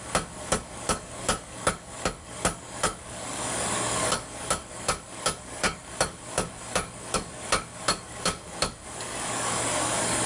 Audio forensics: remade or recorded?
remade